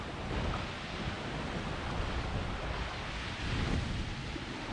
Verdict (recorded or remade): recorded